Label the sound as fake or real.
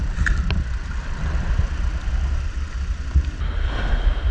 real